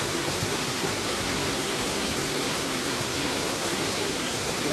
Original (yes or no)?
no